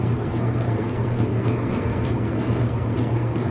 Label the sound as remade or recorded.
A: remade